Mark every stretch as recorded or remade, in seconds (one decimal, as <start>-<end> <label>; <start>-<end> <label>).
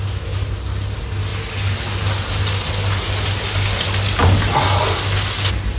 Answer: 0.0-5.8 recorded